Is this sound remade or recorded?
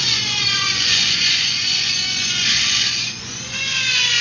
remade